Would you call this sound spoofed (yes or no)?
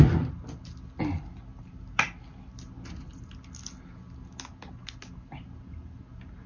no